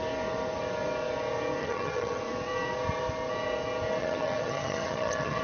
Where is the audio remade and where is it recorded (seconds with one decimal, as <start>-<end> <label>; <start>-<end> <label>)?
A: 0.0-1.6 recorded; 1.6-2.2 remade; 2.2-4.0 recorded; 4.0-5.4 remade